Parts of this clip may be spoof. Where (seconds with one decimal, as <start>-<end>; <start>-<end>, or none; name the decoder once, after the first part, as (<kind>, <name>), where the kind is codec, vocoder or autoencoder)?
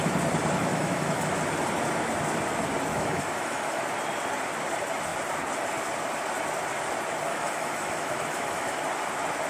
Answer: 0.7-1.4 (autoencoder, DAC-VAE); 2.9-3.8; 7.3-8.8